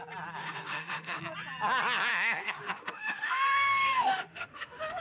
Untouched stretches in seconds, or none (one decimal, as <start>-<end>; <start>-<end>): 0.0-0.4; 1.2-2.1